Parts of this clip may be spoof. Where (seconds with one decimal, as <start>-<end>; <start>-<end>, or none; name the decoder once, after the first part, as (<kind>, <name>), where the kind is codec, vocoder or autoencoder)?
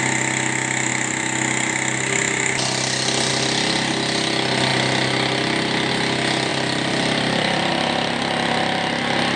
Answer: 6.5-7.7 (vocoder, BigVGAN v2)